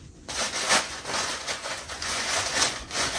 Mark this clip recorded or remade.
remade